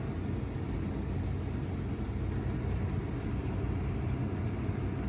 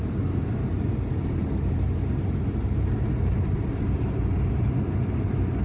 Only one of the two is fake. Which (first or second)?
second